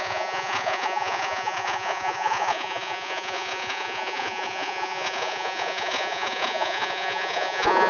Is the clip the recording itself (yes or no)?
no